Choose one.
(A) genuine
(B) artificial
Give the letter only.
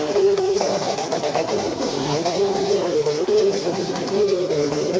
B